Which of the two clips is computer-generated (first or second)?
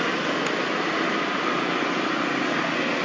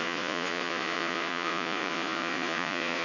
second